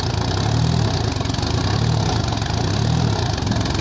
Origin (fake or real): real